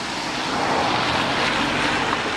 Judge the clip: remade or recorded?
recorded